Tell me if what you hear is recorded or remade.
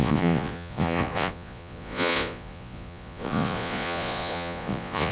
remade